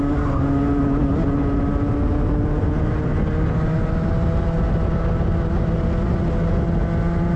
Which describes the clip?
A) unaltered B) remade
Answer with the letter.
A